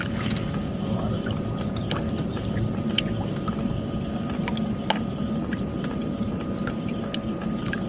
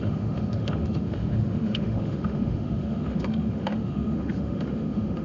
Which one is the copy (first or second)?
second